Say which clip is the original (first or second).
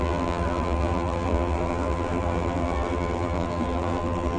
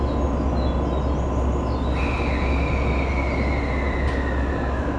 second